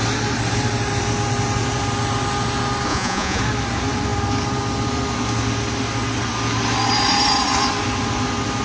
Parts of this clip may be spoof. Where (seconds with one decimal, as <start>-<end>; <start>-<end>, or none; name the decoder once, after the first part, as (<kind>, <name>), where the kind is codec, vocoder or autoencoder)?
2.9-3.4 (vocoder, Vocos)